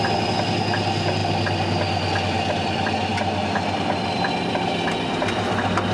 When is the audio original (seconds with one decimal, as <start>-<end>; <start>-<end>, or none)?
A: 0.0-5.9